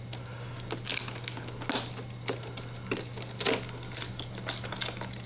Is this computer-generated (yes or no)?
no